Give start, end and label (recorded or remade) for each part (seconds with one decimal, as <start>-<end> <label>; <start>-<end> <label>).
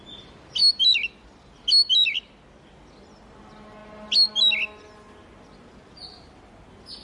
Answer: 0.0-7.0 recorded